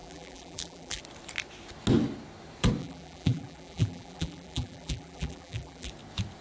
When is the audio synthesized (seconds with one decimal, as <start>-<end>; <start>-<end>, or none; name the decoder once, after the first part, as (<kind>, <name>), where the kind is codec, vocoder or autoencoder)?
0.0-1.0 (vocoder, BigVGAN v2); 2.8-5.9